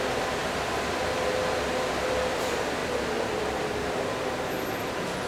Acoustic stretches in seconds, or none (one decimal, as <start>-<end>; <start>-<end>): 0.0-5.3